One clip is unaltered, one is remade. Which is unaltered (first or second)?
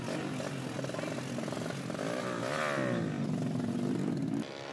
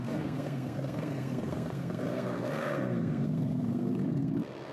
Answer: first